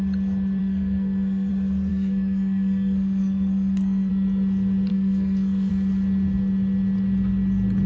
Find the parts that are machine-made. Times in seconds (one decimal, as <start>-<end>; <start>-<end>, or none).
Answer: 0.6-1.5; 1.9-4.1; 4.9-5.7